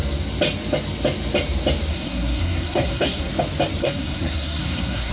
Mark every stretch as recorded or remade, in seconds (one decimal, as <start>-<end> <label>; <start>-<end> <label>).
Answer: 0.0-1.9 recorded; 1.9-3.3 remade; 3.3-3.8 recorded; 3.8-5.1 remade